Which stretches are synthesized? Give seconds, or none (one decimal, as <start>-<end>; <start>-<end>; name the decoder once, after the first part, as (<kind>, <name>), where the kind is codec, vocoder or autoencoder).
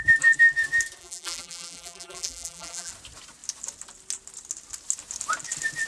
1.0-2.9 (vocoder, BigVGAN v2)